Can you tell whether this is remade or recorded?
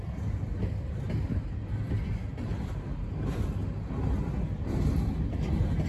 recorded